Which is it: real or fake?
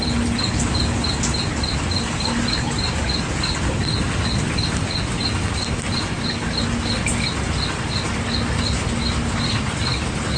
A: real